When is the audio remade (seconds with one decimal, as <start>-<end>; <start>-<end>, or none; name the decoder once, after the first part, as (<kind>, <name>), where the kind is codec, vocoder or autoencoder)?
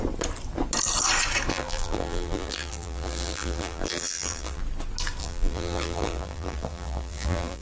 1.5-4.6 (vocoder, BigVGAN v2); 5.2-7.6